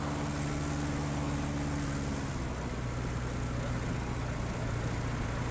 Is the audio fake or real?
real